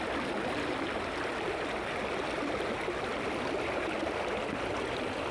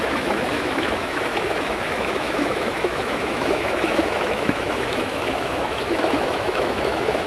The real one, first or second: first